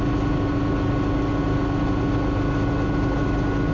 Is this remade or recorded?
recorded